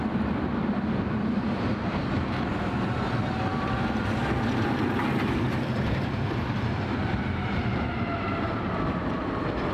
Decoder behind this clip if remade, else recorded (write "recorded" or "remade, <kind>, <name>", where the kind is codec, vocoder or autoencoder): remade, vocoder, BigVGAN v2